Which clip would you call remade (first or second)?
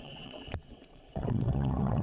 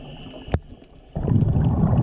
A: first